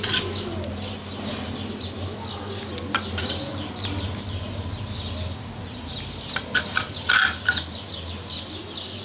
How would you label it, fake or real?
real